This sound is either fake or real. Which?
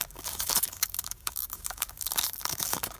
fake